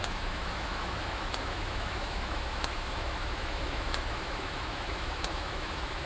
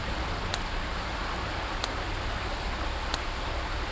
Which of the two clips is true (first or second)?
second